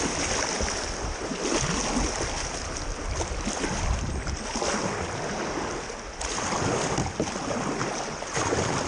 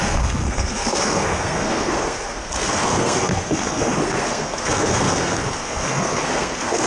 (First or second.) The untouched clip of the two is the first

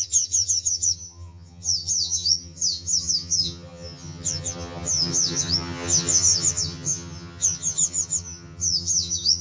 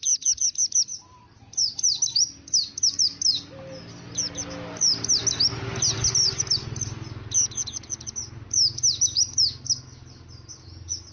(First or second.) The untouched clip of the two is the second